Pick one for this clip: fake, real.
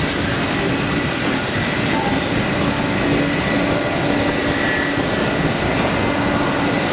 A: real